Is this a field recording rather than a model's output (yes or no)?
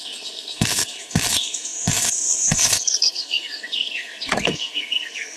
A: no